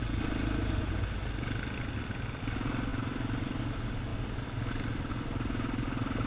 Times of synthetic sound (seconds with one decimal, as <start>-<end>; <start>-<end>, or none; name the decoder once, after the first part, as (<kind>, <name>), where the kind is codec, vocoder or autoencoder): none